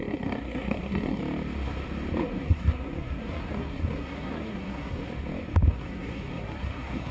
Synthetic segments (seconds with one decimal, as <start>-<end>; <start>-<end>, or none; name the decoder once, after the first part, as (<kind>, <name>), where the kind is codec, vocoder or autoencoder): 0.0-1.2 (codec, SNAC); 2.2-5.1; 5.7-7.1